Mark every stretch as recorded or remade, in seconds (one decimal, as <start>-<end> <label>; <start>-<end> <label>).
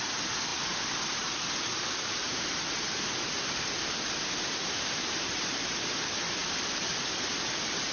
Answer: 0.0-6.4 remade; 6.4-7.3 recorded; 7.3-7.9 remade